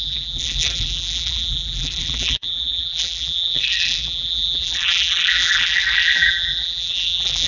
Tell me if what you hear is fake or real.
fake